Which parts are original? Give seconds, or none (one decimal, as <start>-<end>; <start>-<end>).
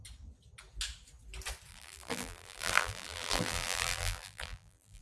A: 0.0-1.7